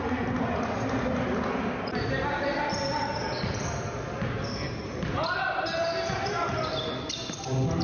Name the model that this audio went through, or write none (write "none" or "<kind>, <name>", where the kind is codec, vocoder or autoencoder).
none